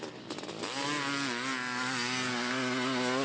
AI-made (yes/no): no